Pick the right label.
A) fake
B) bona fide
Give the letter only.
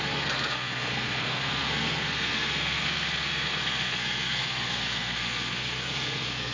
A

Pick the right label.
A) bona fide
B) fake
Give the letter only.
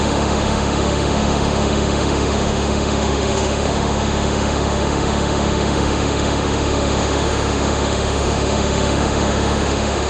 B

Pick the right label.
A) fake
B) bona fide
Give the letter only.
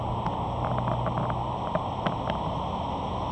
B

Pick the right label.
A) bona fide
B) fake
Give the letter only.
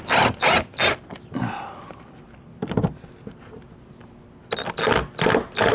A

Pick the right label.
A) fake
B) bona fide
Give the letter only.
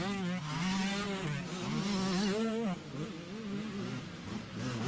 B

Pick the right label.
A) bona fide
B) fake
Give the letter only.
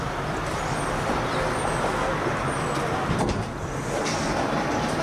A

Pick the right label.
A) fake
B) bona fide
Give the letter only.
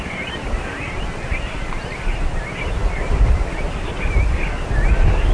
B